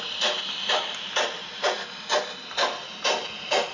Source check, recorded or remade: recorded